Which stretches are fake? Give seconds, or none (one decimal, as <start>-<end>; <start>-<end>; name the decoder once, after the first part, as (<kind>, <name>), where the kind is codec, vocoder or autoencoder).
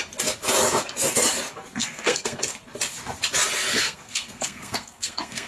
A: 1.8-2.4 (codec, SNAC); 3.7-5.5